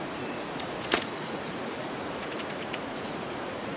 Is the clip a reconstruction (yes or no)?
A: yes